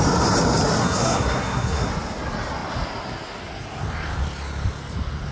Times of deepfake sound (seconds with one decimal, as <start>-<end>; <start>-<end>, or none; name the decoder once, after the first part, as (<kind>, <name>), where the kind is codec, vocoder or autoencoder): 0.8-1.9 (codec, SNAC)